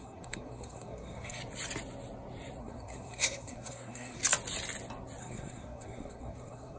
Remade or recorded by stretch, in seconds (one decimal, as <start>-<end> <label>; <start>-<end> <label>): 0.0-1.4 remade; 1.4-2.6 recorded; 2.6-4.2 remade; 4.2-5.2 recorded; 5.2-6.8 remade